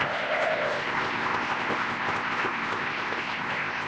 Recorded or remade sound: remade